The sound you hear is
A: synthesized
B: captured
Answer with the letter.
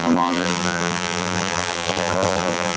A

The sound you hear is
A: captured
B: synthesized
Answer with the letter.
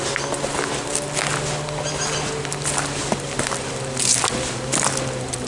A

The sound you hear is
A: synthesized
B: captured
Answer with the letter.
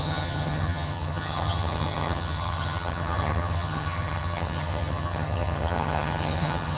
A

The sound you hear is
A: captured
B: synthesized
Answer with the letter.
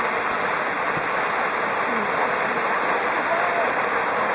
A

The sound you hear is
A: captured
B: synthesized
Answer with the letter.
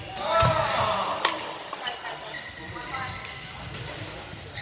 A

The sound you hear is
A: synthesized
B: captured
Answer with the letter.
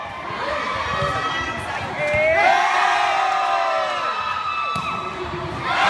B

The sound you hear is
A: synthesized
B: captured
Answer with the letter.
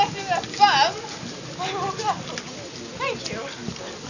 B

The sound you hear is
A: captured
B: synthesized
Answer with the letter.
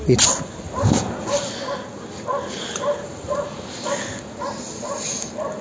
A